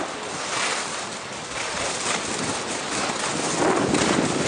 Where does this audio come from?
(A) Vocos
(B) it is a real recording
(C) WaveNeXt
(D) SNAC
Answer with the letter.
B